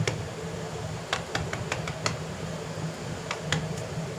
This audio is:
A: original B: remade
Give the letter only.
A